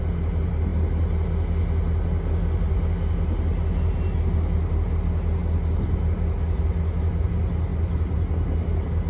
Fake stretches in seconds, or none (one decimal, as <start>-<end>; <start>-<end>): none